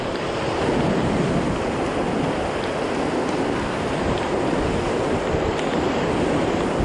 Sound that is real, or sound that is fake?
real